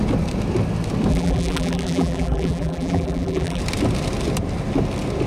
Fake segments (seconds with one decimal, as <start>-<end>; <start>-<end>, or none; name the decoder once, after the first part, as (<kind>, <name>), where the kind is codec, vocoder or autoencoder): 1.1-3.6 (vocoder, BigVGAN v2)